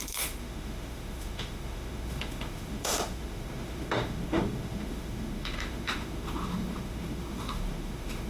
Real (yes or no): no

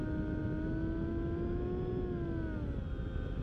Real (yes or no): yes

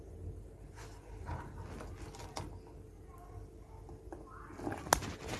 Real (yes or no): yes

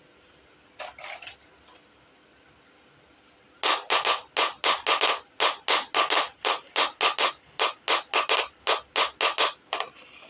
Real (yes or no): yes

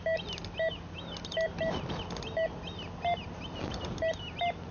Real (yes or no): yes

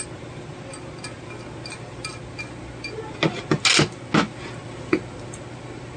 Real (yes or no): yes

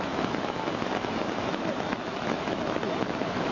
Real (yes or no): no